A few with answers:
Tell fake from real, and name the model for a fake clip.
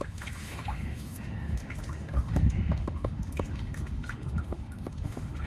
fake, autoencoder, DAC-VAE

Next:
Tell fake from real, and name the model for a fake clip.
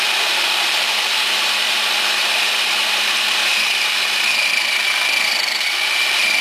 fake, vocoder, BigVGAN v2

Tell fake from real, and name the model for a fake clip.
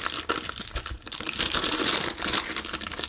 real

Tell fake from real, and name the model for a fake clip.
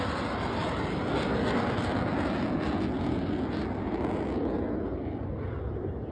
real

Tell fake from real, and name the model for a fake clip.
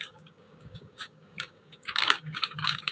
fake, codec, DAC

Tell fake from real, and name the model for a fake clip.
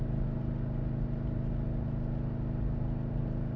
real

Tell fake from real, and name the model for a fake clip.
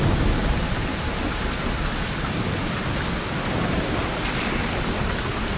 real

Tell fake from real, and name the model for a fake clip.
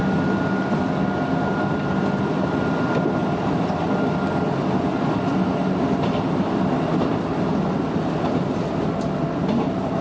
real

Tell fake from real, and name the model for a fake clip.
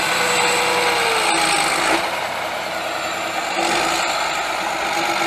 real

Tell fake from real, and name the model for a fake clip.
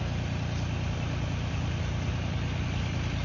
real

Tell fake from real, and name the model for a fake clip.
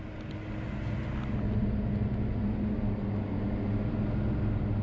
real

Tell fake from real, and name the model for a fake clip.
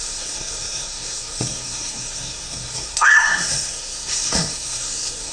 fake, codec, SNAC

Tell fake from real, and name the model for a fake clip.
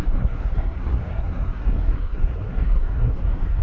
fake, codec, SNAC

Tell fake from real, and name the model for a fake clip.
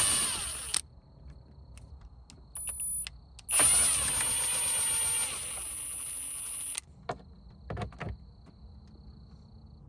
real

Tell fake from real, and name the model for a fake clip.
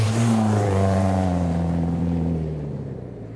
fake, vocoder, BigVGAN v2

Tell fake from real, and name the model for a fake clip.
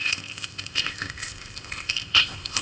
fake, codec, ZipCodec